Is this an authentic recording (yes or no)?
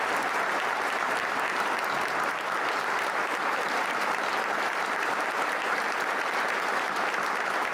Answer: no